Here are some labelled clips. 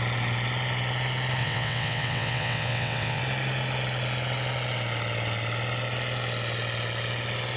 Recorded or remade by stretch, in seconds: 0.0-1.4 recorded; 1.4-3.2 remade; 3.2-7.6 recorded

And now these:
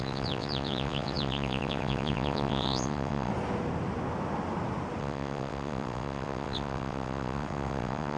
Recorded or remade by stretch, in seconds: 0.0-3.3 remade; 3.3-5.0 recorded; 5.0-8.2 remade

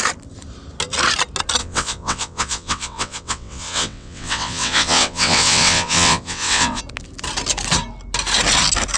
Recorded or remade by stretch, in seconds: 0.0-1.6 recorded; 1.6-6.8 remade; 6.8-9.0 recorded